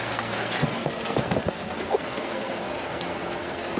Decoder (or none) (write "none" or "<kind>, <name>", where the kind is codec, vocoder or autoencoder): codec, SNAC